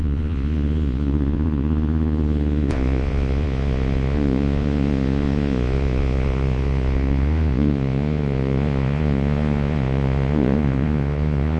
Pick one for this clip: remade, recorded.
remade